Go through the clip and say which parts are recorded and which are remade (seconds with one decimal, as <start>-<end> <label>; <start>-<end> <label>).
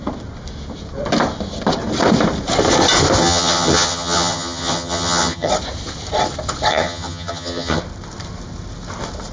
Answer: 0.0-3.2 recorded; 3.2-5.5 remade; 5.5-6.7 recorded; 6.7-7.8 remade; 7.8-9.3 recorded